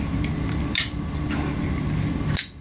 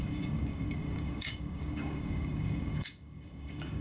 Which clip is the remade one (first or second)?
second